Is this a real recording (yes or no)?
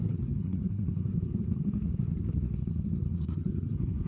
no